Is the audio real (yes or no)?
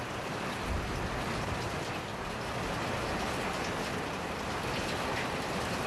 yes